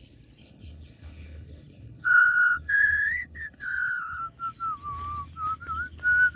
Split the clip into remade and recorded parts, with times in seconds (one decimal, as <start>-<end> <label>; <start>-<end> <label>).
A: 0.0-0.4 recorded; 0.4-4.2 remade; 4.2-6.4 recorded